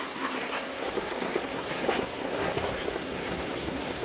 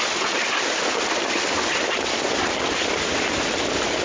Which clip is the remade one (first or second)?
first